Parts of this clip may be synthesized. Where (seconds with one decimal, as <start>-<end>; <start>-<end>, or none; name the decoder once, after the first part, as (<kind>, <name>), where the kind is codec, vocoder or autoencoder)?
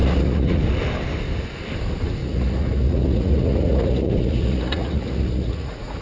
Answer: 0.0-0.6 (vocoder, Vocos); 2.2-6.0